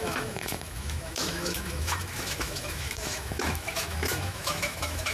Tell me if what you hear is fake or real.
fake